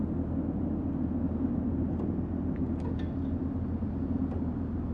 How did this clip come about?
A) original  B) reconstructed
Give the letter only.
A